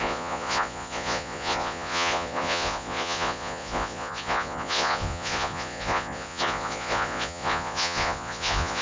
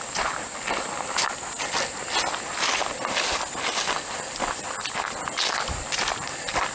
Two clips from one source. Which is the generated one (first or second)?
first